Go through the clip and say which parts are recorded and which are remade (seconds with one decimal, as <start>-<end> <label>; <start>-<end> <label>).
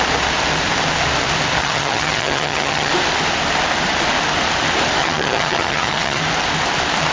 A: 0.0-1.6 recorded; 1.6-2.9 remade; 2.9-5.0 recorded; 5.0-6.2 remade; 6.2-7.1 recorded